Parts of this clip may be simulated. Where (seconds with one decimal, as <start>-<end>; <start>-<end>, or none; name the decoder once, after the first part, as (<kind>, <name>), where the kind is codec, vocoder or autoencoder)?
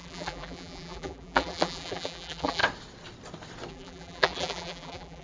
0.0-2.6 (vocoder, BigVGAN v2); 3.7-5.2